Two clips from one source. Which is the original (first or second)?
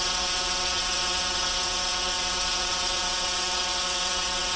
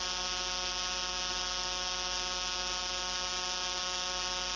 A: second